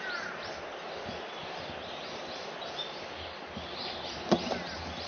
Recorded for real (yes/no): yes